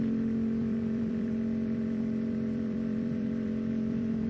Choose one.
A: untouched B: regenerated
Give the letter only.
B